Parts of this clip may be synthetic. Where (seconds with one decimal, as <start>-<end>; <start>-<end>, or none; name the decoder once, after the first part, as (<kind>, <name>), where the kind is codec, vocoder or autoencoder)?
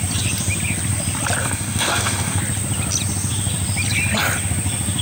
1.4-2.4 (codec, DAC)